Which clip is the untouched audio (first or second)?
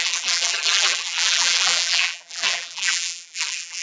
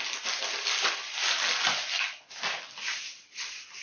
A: second